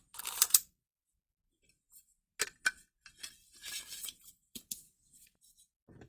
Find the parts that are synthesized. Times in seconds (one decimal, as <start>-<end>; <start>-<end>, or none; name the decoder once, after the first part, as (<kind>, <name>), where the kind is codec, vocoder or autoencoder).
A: 0.0-2.1 (vocoder, BigVGAN v2); 3.3-6.1